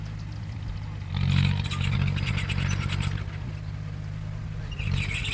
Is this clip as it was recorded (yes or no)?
yes